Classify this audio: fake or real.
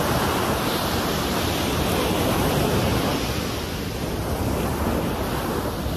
real